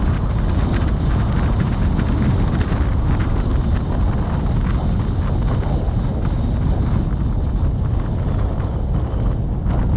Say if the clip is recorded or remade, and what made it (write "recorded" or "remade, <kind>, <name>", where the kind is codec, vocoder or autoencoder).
recorded